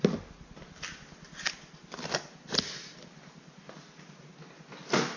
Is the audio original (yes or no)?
yes